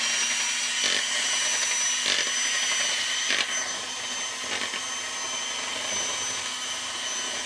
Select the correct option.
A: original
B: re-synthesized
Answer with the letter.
A